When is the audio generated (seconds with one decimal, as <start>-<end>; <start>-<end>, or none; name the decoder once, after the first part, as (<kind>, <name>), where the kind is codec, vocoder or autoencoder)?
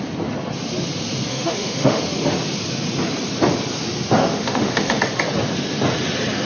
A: 1.3-2.0 (autoencoder, DAC-VAE); 4.2-5.0